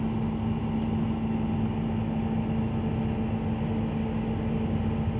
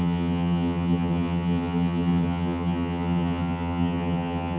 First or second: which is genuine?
first